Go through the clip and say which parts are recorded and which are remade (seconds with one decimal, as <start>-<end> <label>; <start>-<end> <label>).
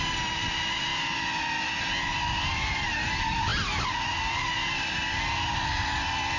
0.0-6.4 recorded